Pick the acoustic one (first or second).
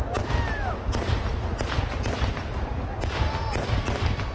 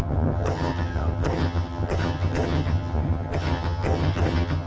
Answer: first